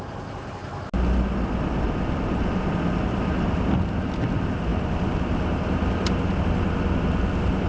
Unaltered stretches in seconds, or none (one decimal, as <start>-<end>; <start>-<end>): 0.0-7.7